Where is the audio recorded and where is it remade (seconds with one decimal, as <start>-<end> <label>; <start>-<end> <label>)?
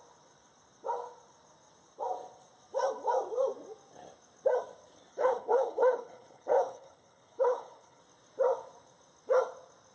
0.0-5.1 recorded; 5.1-8.0 remade; 8.0-9.9 recorded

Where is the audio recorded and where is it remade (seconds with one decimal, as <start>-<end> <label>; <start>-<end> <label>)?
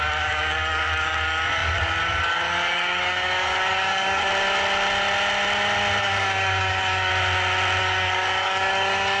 0.0-4.3 remade; 4.3-6.0 recorded; 6.0-7.1 remade; 7.1-7.8 recorded; 7.8-9.2 remade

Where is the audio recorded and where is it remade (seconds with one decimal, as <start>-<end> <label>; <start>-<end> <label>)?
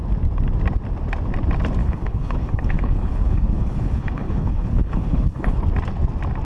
0.0-1.8 recorded; 1.8-5.6 remade; 5.6-6.4 recorded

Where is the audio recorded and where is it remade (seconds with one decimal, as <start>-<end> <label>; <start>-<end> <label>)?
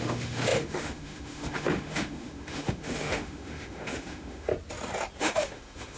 0.0-4.5 remade; 4.5-5.2 recorded; 5.2-6.0 remade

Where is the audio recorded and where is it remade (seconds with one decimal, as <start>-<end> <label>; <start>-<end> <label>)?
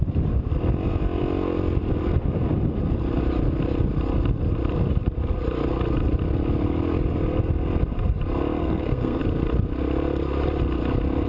0.0-8.6 recorded; 8.6-9.2 remade; 9.2-11.3 recorded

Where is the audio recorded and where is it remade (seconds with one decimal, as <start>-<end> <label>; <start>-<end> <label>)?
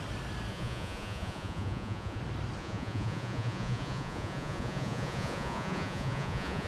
0.0-0.5 recorded; 0.5-2.2 remade; 2.2-2.6 recorded; 2.6-6.7 remade